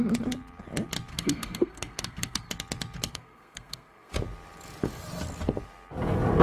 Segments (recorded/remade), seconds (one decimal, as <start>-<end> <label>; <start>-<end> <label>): 0.0-1.1 recorded; 1.1-2.5 remade; 2.5-3.1 recorded; 3.1-4.1 remade; 4.1-6.4 recorded